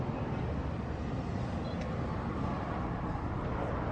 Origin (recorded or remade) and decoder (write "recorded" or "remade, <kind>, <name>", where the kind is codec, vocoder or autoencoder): recorded